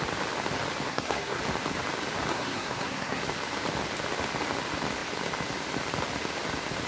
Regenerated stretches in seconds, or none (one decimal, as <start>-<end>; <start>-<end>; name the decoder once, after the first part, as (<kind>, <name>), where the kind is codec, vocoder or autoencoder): 0.9-1.4 (codec, SNAC); 2.3-3.2